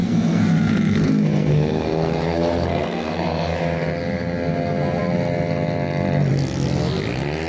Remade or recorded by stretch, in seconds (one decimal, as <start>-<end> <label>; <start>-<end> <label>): 0.0-3.6 remade; 3.6-7.5 recorded